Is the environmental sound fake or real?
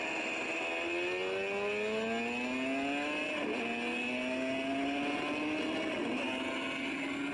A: real